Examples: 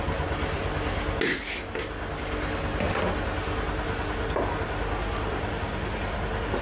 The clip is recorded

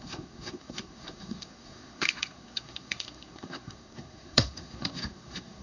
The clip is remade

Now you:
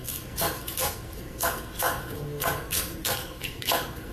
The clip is remade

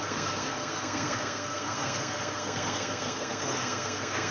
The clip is remade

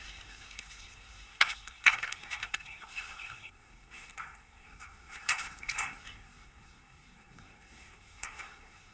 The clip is remade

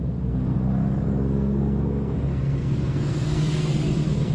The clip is remade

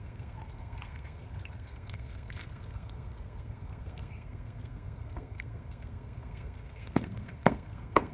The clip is remade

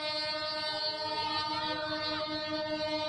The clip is recorded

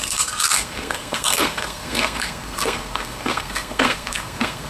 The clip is remade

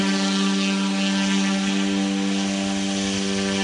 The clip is recorded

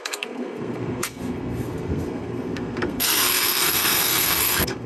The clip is remade